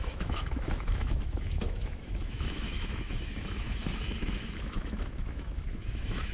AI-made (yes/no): yes